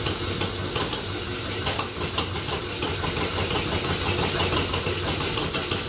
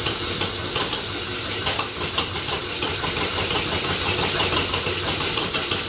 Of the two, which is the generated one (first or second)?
second